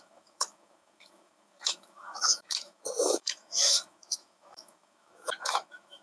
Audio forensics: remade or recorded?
remade